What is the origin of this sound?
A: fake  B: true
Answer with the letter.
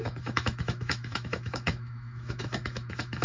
A